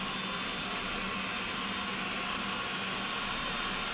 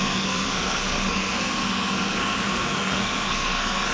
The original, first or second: first